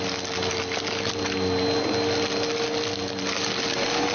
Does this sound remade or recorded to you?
recorded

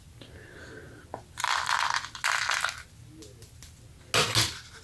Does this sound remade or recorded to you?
recorded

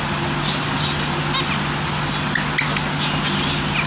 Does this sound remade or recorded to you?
recorded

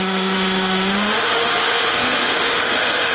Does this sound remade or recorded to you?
remade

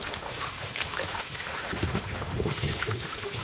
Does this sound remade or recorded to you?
remade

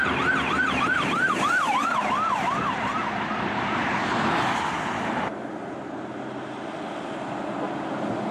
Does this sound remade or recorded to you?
recorded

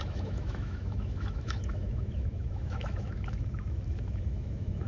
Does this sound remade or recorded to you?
remade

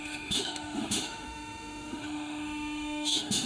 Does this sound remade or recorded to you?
remade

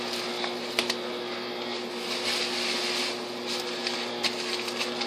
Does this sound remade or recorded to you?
recorded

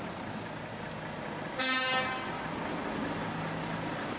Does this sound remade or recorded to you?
recorded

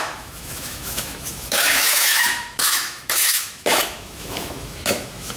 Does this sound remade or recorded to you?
remade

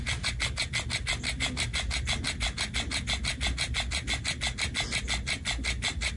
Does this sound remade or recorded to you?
recorded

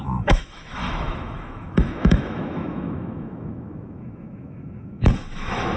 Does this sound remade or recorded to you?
remade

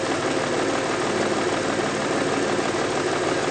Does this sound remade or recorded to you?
recorded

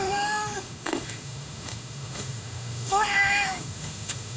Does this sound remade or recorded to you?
remade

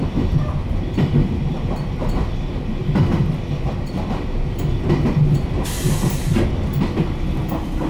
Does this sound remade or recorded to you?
recorded